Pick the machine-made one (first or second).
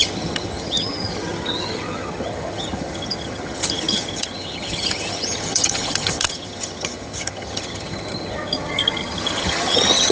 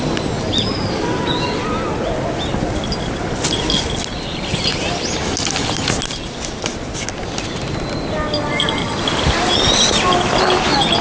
first